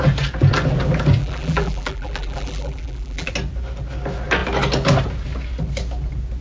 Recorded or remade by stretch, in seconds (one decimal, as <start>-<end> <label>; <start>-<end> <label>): 0.0-1.2 recorded; 1.2-3.3 remade; 3.3-6.4 recorded